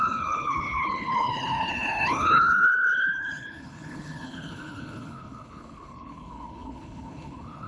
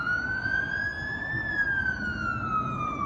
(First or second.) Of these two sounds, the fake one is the first